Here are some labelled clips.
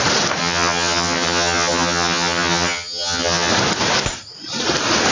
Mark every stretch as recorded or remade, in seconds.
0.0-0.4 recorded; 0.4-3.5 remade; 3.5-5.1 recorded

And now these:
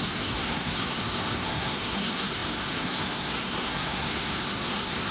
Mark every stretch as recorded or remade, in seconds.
0.0-5.1 remade

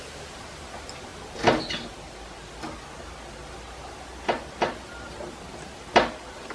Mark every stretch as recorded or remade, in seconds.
0.0-6.5 recorded

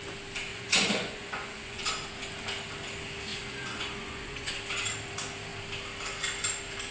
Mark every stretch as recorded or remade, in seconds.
0.0-0.5 recorded; 0.5-1.8 remade; 1.8-3.3 recorded; 3.3-4.5 remade; 4.5-6.9 recorded

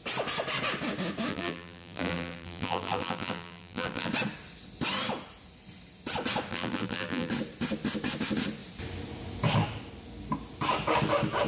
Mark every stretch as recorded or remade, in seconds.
0.0-1.3 recorded; 1.3-4.1 remade; 4.1-6.5 recorded; 6.5-7.3 remade; 7.3-11.5 recorded

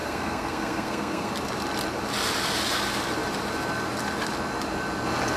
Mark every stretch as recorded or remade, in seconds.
0.0-1.3 remade; 1.3-5.4 recorded

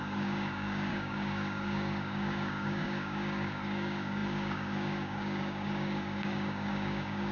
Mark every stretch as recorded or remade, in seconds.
0.0-7.3 remade

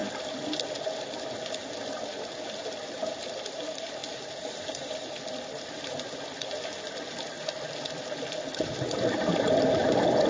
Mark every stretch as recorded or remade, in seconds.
0.0-10.3 recorded